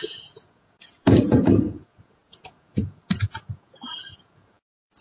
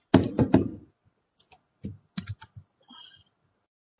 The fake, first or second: first